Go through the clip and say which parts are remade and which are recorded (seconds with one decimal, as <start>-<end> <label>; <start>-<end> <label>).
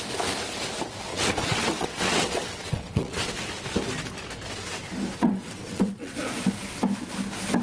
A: 0.0-1.1 recorded; 1.1-3.3 remade; 3.3-5.2 recorded; 5.2-6.1 remade; 6.1-7.6 recorded